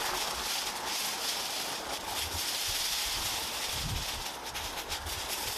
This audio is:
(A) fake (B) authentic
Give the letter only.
B